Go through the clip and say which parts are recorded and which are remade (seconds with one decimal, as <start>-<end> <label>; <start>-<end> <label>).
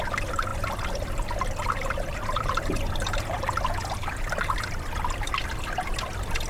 0.0-0.5 recorded; 0.5-3.5 remade; 3.5-6.5 recorded